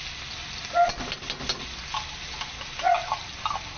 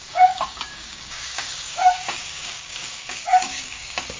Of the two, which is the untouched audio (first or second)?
first